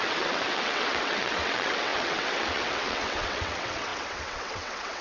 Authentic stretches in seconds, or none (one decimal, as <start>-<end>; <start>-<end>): none